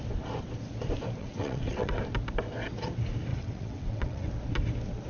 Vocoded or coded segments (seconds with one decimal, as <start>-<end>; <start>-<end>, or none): 1.2-2.0; 3.3-4.3